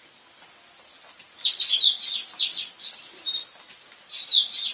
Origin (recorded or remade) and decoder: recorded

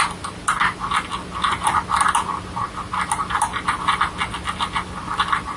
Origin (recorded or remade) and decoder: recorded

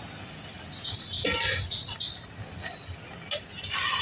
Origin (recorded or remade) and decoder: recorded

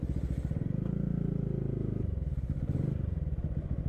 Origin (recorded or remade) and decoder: recorded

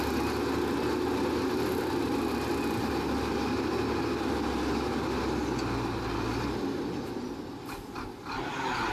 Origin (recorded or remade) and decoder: recorded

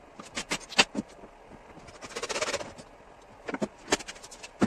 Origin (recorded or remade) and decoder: recorded